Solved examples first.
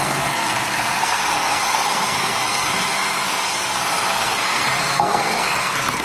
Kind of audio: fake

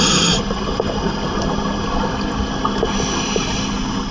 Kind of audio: real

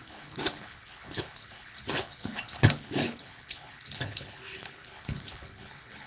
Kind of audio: fake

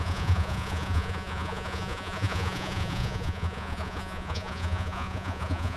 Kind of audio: fake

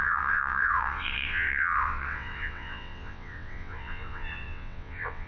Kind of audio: fake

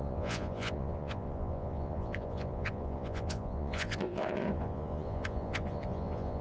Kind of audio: fake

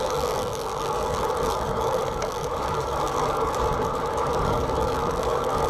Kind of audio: fake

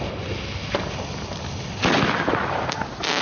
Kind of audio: real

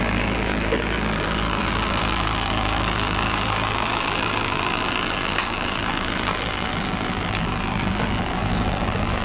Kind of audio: fake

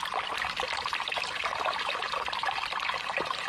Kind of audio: real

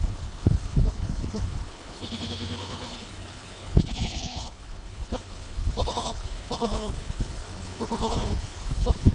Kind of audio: fake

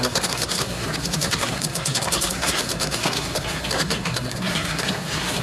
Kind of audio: fake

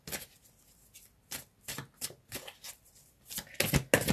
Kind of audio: real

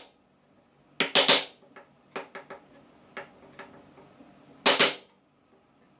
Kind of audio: real